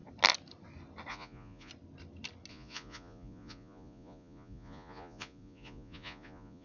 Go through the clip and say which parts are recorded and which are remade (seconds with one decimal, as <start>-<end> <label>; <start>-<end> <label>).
0.0-1.1 recorded; 1.1-1.7 remade; 1.7-2.5 recorded; 2.5-6.6 remade